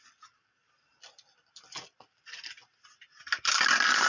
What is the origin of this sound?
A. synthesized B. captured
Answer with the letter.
B